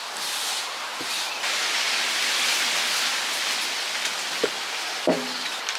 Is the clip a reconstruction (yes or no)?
no